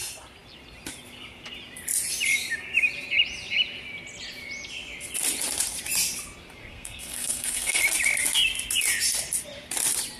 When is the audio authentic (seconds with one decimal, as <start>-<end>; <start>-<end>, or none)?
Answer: 0.0-6.6; 7.8-10.2